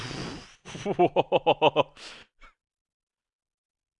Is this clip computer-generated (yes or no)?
no